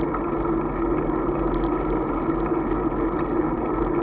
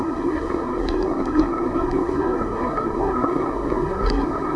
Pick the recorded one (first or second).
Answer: first